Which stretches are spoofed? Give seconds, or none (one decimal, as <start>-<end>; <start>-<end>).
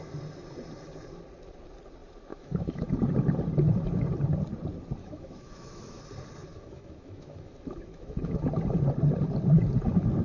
2.3-2.9; 5.0-6.0; 6.5-8.4